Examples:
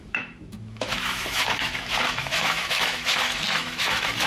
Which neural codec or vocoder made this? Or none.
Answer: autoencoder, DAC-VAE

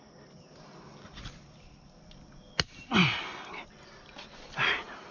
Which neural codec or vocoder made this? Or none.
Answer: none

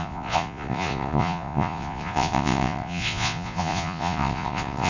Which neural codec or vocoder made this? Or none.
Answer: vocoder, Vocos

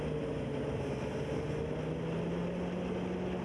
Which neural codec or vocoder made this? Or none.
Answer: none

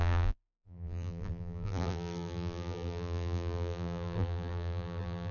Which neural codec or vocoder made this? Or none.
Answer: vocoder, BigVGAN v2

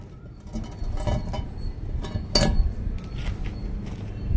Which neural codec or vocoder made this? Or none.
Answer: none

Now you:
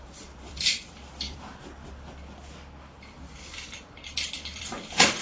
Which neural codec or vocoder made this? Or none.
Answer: vocoder, BigVGAN v2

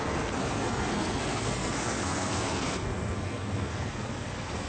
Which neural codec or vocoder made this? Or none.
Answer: codec, SNAC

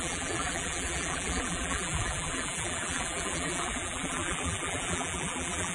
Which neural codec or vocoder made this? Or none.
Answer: vocoder, BigVGAN v2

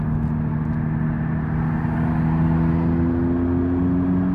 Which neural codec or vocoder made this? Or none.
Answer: none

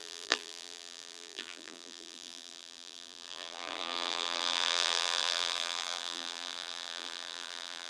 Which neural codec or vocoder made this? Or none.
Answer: vocoder, BigVGAN v2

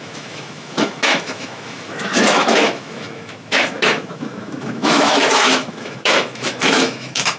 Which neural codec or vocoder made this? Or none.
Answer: autoencoder, DAC-VAE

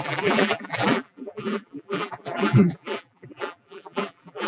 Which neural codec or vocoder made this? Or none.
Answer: vocoder, BigVGAN v2